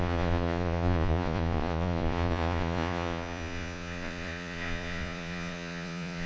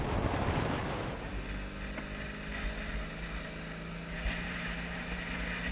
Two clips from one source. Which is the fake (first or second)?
first